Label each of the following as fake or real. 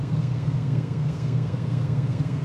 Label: fake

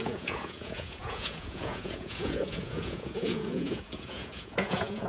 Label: fake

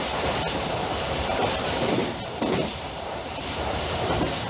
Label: fake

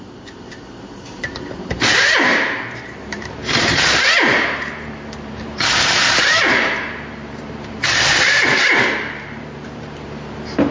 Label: fake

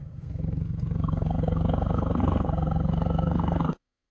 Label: fake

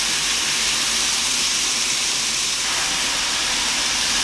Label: real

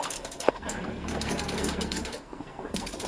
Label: fake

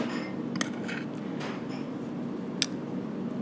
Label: real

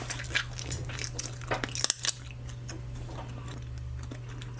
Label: real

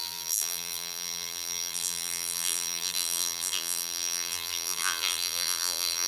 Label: fake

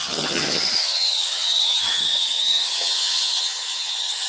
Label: fake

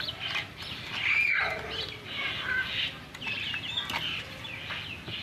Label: real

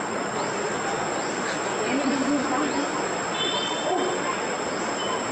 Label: real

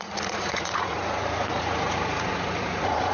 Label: fake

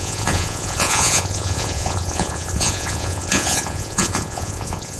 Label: fake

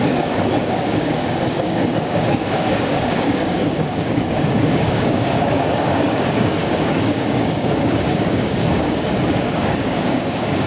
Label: fake